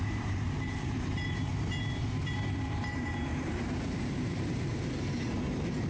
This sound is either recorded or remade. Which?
remade